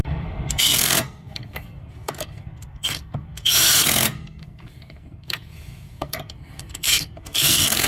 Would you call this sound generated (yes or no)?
yes